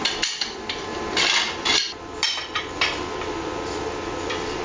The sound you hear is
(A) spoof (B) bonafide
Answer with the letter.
A